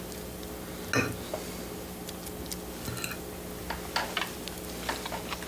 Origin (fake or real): real